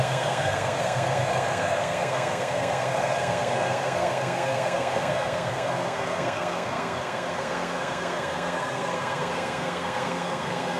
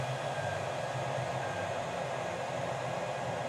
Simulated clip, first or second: first